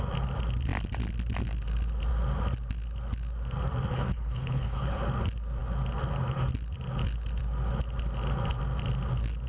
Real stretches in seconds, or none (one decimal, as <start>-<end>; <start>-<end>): 0.0-3.9; 5.0-9.5